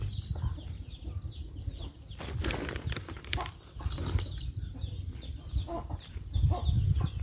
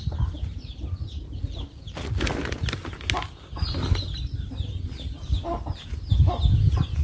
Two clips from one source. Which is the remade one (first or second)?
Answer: first